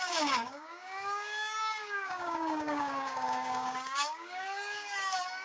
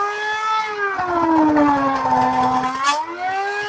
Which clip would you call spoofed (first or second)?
first